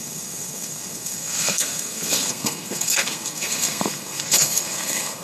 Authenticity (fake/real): fake